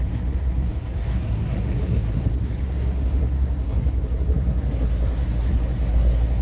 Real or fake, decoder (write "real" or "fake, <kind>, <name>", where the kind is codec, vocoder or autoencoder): fake, codec, SNAC